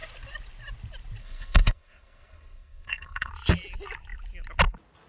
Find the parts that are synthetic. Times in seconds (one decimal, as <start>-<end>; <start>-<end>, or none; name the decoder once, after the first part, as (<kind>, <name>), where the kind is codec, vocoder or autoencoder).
1.2-3.3 (codec, SNAC)